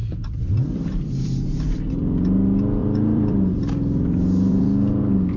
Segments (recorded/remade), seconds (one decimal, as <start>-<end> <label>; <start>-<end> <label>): 0.0-1.9 remade; 1.9-2.8 recorded; 2.8-5.0 remade; 5.0-5.4 recorded